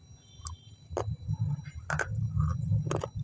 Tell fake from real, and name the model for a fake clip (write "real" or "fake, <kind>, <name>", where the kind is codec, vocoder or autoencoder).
real